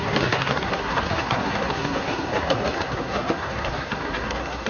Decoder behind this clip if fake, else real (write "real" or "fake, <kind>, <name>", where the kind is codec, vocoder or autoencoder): fake, codec, SNAC